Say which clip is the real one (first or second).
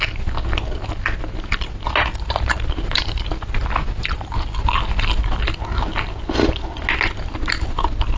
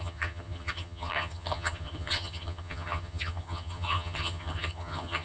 first